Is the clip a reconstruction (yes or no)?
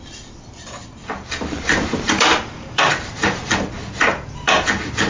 yes